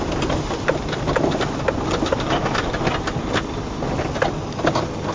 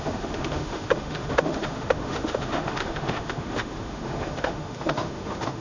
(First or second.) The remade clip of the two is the second